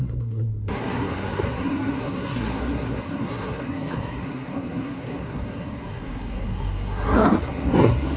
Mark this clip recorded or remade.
remade